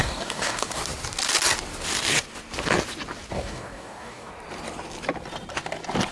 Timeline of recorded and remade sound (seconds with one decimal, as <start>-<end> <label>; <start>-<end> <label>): 0.0-0.8 remade; 0.8-3.3 recorded; 3.3-4.3 remade; 4.3-6.1 recorded